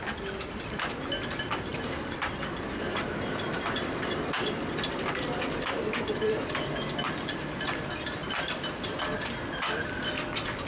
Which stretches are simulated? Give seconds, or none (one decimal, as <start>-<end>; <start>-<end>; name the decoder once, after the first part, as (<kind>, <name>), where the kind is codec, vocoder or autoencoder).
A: 8.2-8.8 (vocoder, BigVGAN v2)